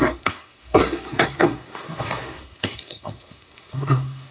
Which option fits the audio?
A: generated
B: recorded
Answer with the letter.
A